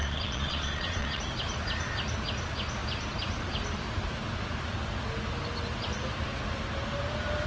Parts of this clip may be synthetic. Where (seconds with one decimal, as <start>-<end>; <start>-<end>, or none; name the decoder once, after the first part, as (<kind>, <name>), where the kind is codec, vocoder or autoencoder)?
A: 0.0-1.2 (vocoder, Vocos)

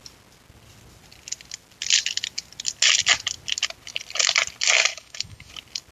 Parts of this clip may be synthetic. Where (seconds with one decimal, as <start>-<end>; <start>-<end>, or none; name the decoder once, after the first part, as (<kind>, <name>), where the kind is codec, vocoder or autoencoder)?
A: 4.9-5.5 (autoencoder, DAC-VAE)